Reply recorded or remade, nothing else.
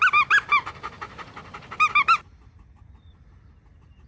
recorded